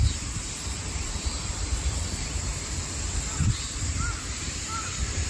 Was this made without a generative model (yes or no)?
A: no